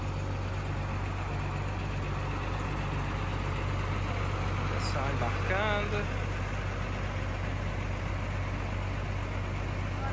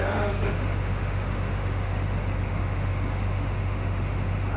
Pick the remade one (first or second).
second